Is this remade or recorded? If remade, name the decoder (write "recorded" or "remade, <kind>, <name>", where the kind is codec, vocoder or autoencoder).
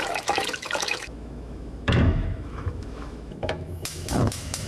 remade, autoencoder, DAC-VAE